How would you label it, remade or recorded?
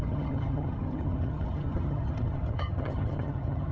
remade